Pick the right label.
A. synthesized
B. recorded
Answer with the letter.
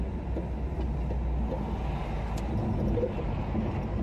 B